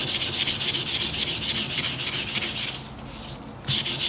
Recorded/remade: recorded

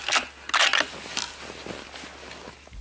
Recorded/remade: recorded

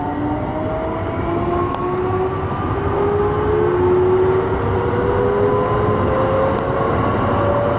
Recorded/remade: recorded